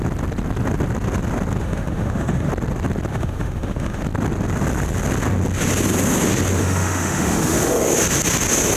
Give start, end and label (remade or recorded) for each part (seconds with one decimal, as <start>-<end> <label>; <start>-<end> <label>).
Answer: 0.0-1.6 recorded; 1.6-2.5 remade; 2.5-3.1 recorded; 3.1-4.0 remade; 4.0-6.6 recorded; 6.6-7.9 remade; 7.9-8.8 recorded